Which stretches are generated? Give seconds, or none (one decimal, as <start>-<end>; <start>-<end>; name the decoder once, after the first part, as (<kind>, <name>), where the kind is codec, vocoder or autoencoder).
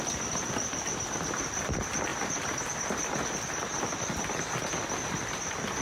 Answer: none